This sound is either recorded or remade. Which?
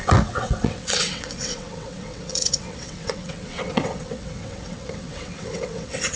remade